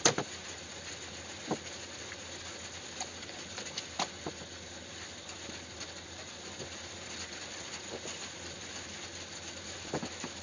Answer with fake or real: real